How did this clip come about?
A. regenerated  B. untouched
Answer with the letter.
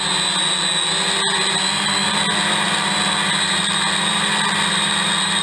B